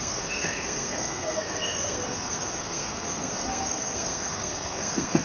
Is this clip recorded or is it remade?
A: remade